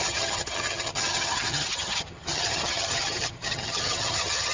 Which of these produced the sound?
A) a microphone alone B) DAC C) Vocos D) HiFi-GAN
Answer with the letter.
D